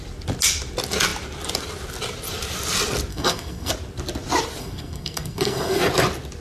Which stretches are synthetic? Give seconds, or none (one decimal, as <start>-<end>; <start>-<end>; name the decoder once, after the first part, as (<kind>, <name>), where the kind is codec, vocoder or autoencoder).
3.1-3.7 (codec, SNAC); 4.6-5.8